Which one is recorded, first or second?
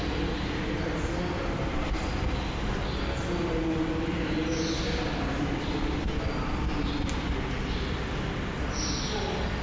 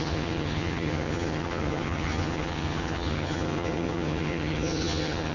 first